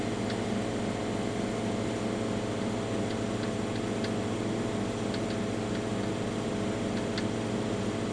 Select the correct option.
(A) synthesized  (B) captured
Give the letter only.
B